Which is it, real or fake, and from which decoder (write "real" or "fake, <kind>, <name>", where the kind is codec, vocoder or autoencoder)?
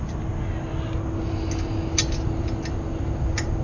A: real